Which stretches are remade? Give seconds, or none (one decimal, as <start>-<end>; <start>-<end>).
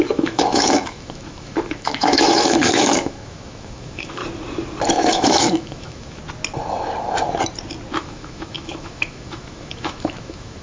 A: 0.0-4.2; 4.9-6.2; 8.0-10.6